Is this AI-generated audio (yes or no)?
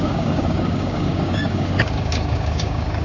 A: yes